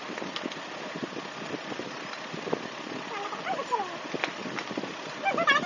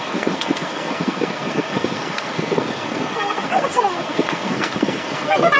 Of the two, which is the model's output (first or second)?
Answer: second